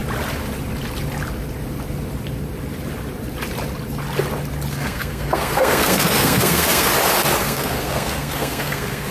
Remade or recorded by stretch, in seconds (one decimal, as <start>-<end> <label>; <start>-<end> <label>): 0.0-4.7 recorded; 4.7-6.9 remade; 6.9-7.4 recorded; 7.4-9.1 remade